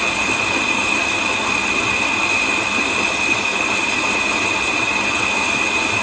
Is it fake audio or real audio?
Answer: real